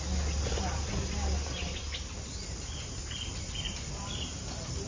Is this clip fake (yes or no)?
no